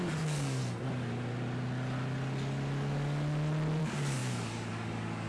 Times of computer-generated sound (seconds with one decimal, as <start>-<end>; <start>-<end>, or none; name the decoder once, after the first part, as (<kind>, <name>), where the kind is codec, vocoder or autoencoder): 0.0-0.6 (codec, DAC); 3.8-5.3